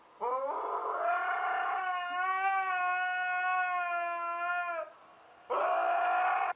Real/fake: real